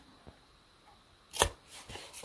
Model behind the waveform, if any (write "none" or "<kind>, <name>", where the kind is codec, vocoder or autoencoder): none